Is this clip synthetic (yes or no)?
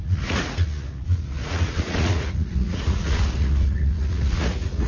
yes